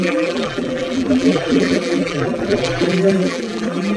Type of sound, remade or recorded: remade